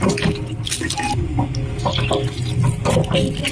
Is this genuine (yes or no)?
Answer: yes